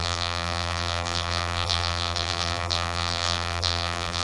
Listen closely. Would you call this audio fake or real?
fake